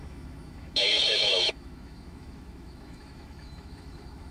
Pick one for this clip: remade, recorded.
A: remade